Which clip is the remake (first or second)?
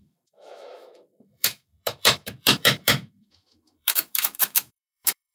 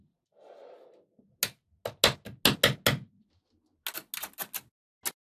first